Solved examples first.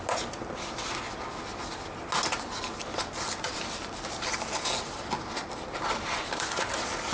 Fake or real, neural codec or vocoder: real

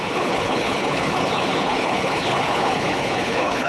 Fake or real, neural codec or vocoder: fake, codec, HILCodec